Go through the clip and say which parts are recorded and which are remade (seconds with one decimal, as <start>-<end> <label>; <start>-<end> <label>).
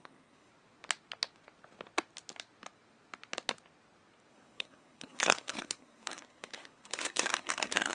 0.0-0.5 remade; 0.5-4.3 recorded; 4.3-7.9 remade